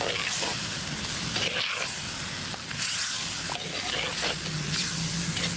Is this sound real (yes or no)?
yes